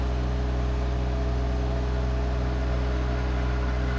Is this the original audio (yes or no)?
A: yes